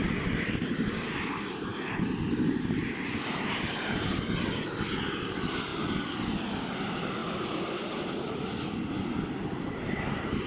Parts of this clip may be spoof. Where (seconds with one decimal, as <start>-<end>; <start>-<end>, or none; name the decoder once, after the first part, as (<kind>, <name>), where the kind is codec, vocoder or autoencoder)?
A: 0.0-2.8 (vocoder, BigVGAN v2); 4.4-5.7; 6.6-7.2; 9.6-10.5